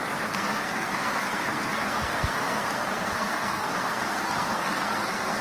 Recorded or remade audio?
remade